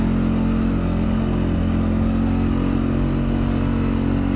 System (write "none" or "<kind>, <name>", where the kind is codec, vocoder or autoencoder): none